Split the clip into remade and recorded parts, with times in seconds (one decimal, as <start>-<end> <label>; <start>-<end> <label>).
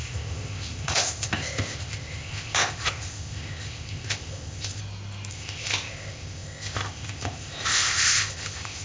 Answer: 0.0-4.8 remade; 4.8-5.3 recorded; 5.3-8.8 remade